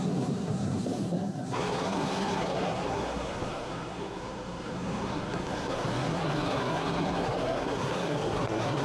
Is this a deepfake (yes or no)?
yes